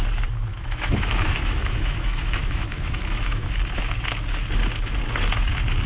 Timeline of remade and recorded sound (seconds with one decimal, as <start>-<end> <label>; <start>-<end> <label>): 0.0-0.5 recorded; 0.5-3.5 remade; 3.5-5.9 recorded